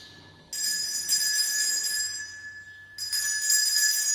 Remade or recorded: recorded